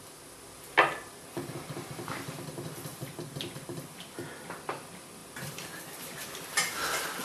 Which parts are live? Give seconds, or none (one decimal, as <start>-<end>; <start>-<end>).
0.0-7.2